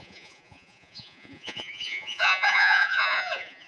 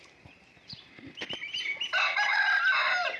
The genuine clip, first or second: second